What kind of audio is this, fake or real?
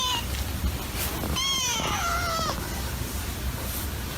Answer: real